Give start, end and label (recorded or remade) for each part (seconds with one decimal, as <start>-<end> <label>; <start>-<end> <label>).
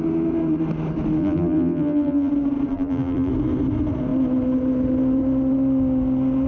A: 0.0-1.2 recorded; 1.2-2.3 remade; 2.3-2.7 recorded; 2.7-3.3 remade; 3.3-6.5 recorded